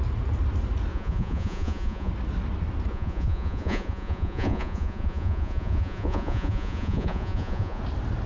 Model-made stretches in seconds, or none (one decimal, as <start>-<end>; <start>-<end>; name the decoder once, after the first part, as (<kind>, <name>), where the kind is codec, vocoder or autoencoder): 0.9-2.1 (vocoder, Vocos); 2.9-7.8